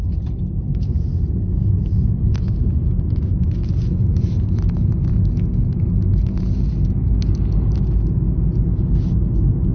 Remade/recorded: recorded